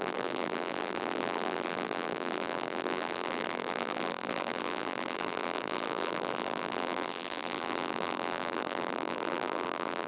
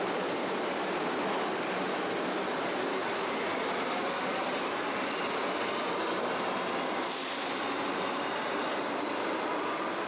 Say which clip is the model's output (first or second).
first